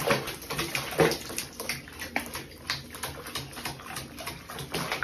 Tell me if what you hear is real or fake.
real